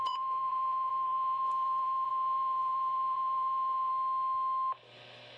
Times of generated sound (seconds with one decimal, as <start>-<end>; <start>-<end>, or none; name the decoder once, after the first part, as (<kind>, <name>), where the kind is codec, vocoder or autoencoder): 0.0-3.9 (vocoder, Vocos)